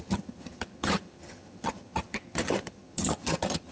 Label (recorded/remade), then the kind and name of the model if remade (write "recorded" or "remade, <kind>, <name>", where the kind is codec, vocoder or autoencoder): remade, vocoder, HiFi-GAN